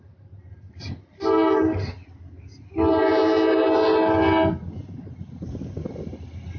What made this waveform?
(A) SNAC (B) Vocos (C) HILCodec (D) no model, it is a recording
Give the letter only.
D